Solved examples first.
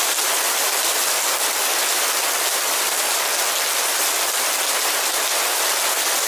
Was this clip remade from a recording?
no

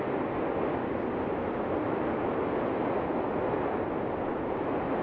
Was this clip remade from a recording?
no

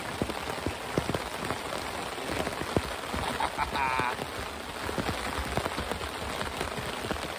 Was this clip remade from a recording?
no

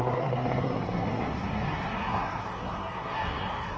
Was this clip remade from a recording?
yes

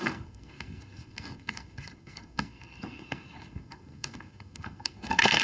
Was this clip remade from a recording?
yes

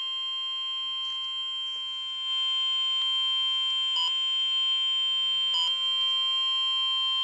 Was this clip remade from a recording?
no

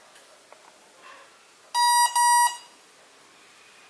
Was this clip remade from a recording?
no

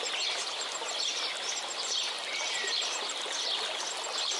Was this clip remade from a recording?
no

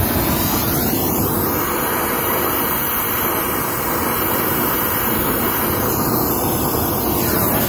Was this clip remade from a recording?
no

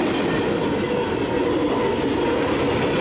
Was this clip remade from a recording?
no